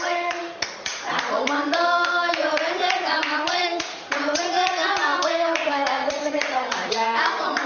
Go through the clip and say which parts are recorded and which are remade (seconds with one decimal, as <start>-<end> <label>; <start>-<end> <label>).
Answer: 0.0-7.7 remade